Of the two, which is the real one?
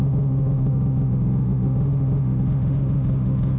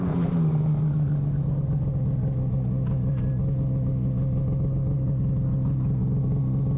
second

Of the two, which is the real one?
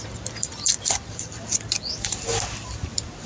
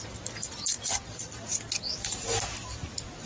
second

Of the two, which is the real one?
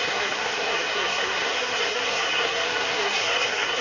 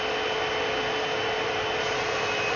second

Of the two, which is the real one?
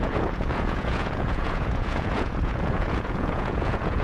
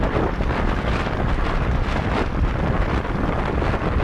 second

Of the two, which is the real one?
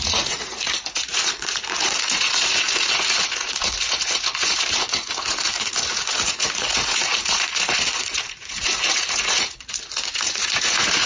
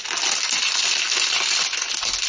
second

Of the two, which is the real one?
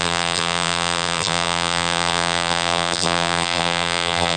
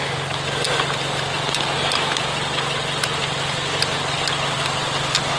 second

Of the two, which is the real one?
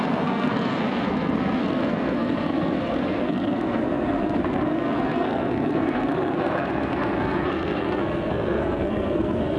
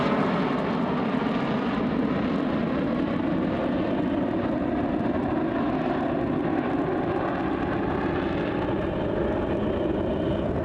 second